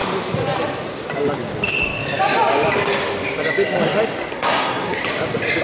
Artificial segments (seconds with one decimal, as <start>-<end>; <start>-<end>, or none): 4.3-5.0